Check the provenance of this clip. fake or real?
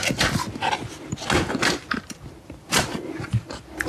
real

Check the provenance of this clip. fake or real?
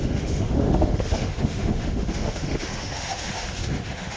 fake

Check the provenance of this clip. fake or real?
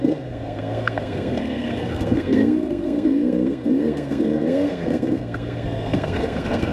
fake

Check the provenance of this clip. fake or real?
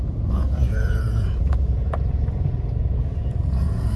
fake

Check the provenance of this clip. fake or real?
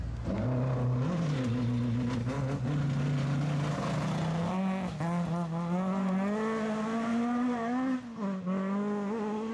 real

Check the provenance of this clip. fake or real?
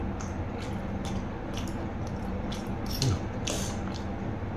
real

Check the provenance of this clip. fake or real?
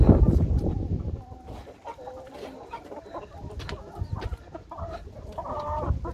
real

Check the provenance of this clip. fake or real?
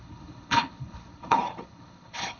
fake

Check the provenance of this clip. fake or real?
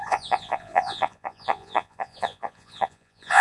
fake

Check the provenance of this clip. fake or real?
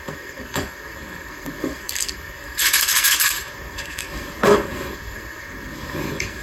fake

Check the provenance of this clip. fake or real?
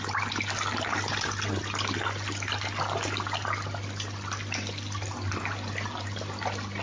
real